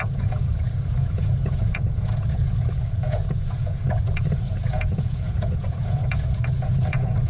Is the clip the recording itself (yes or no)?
no